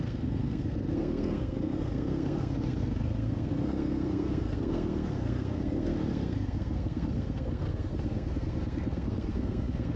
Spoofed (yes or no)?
yes